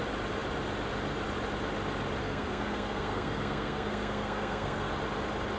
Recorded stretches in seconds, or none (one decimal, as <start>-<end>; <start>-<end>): 0.0-2.2; 4.9-5.6